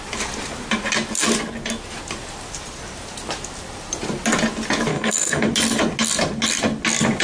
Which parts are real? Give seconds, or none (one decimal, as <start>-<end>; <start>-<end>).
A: 0.0-4.9; 5.5-7.2